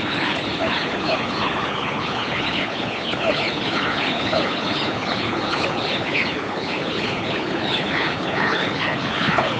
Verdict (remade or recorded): remade